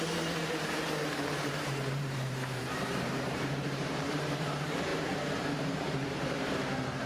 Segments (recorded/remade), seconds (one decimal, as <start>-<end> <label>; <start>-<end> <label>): 0.0-7.1 remade

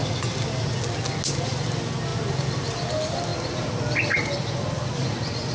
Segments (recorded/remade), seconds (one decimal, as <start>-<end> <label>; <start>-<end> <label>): 0.0-0.7 remade; 0.7-3.3 recorded; 3.3-5.5 remade